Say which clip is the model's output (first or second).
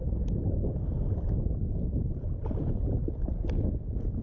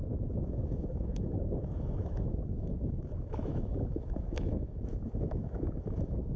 second